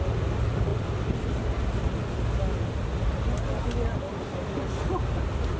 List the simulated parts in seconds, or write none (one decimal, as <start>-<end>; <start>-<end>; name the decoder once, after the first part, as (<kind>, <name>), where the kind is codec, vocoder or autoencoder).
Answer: none